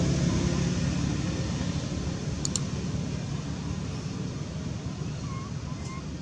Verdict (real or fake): real